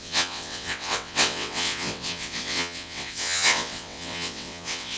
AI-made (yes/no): yes